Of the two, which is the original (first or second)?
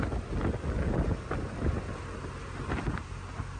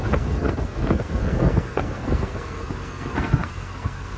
first